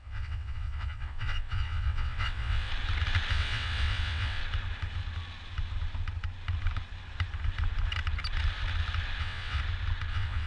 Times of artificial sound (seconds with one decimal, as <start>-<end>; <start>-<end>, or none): 0.0-2.7; 3.3-4.4; 9.2-9.6; 10.1-10.5